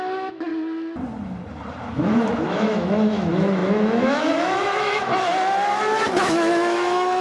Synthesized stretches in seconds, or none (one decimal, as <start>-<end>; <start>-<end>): 0.0-0.5; 1.9-5.1; 6.2-7.2